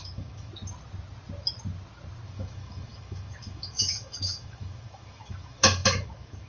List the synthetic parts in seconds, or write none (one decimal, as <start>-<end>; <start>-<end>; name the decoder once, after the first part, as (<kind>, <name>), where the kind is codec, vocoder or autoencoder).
0.0-0.5 (autoencoder, DAC-VAE); 2.3-6.5